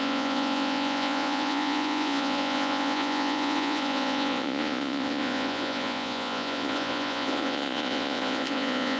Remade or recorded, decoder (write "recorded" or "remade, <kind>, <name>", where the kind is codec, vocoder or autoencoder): remade, vocoder, Vocos